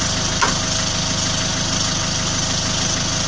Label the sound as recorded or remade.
recorded